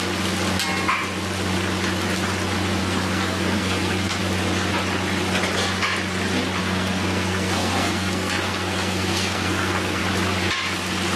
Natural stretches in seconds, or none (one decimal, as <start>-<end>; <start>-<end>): 0.0-2.8; 4.2-6.6; 10.0-11.2